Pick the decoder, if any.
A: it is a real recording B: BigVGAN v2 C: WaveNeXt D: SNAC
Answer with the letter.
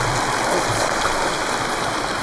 A